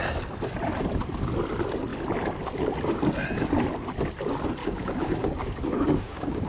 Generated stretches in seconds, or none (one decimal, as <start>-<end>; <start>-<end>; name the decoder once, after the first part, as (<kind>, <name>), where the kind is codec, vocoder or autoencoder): 4.6-6.5 (codec, DAC)